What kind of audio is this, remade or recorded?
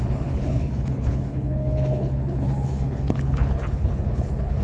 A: remade